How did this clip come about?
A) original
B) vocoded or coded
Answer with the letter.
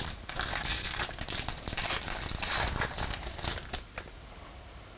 A